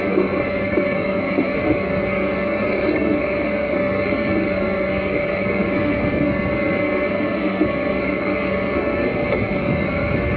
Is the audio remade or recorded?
remade